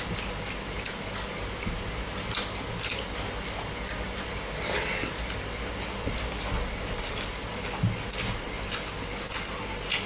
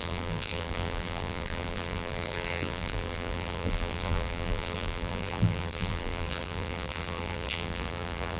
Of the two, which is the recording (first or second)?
first